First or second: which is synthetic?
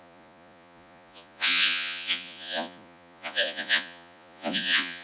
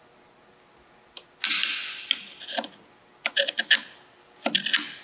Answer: first